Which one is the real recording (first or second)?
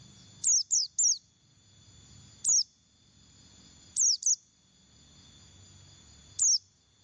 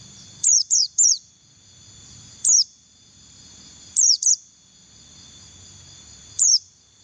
first